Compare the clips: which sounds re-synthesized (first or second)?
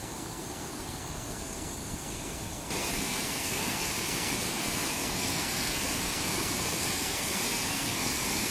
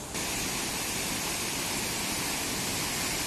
first